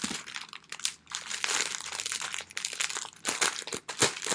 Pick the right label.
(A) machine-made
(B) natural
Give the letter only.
B